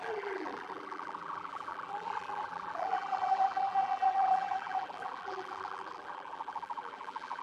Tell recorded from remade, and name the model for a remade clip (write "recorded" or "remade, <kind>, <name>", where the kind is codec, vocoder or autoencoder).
remade, vocoder, BigVGAN v2